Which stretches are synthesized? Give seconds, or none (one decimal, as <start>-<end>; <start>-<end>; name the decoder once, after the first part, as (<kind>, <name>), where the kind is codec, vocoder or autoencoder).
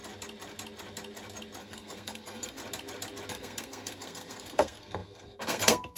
1.6-2.6 (codec, SNAC); 3.3-6.0